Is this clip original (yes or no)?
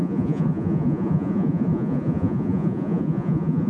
no